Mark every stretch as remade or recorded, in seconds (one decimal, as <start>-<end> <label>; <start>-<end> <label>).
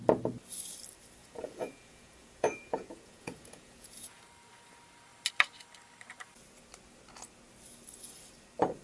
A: 0.0-1.2 recorded; 1.2-4.2 remade; 4.2-8.8 recorded